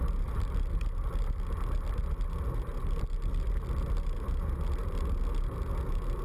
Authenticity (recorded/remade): recorded